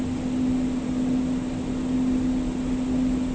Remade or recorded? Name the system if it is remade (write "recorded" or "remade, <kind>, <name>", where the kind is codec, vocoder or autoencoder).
recorded